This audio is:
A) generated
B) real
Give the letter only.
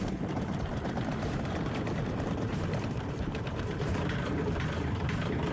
A